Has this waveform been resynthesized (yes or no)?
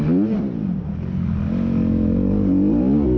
no